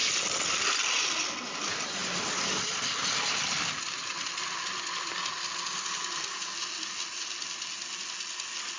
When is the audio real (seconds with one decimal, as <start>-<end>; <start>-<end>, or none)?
0.0-8.8